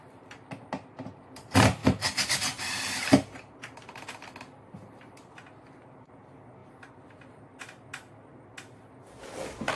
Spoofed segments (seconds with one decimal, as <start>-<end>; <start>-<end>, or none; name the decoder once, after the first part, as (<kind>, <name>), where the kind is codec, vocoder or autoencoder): none